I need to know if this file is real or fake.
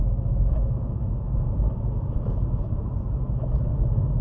fake